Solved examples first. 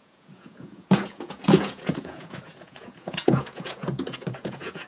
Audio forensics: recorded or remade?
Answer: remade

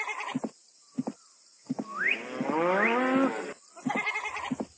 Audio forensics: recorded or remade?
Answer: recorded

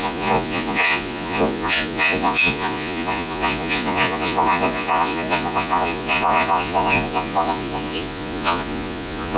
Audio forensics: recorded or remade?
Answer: remade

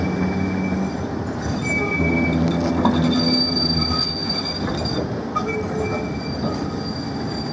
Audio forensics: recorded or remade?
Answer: recorded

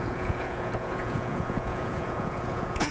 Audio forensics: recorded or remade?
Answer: remade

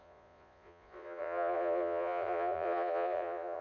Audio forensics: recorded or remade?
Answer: remade